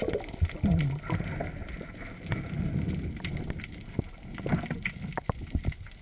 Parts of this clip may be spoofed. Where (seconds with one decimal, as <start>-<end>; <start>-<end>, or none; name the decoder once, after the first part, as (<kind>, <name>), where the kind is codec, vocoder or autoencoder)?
none